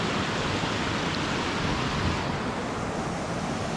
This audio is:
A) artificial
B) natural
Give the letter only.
B